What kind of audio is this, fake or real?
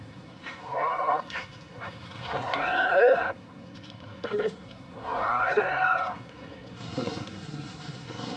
fake